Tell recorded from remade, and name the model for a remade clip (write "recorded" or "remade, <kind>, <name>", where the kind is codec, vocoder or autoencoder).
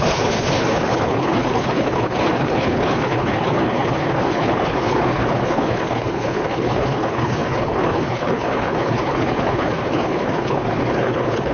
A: remade, codec, HILCodec